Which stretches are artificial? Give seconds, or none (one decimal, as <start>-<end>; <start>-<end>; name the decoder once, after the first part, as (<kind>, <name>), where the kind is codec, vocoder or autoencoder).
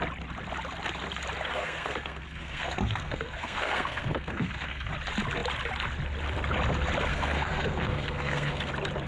1.5-4.9 (codec, SNAC); 7.1-8.7